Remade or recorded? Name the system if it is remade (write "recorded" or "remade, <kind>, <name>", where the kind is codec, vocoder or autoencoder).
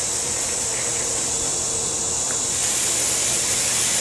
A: recorded